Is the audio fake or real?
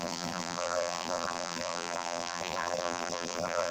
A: fake